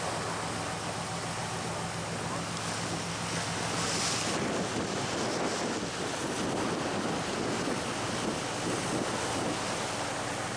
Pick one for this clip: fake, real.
real